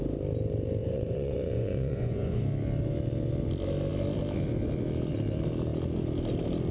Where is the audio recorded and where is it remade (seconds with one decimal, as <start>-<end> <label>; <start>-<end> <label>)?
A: 0.0-0.8 recorded; 0.8-2.4 remade; 2.4-6.7 recorded